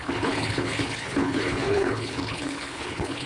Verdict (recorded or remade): remade